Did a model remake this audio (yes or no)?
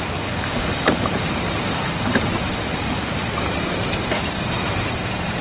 yes